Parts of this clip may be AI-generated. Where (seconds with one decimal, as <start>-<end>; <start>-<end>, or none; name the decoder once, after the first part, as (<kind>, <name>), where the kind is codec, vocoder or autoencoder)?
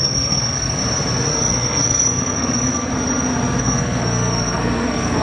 0.0-0.8 (codec, SNAC); 1.3-2.9; 3.6-5.2